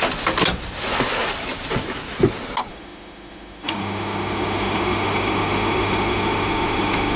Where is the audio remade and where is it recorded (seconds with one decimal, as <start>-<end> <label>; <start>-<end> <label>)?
0.0-2.7 recorded; 2.7-7.2 remade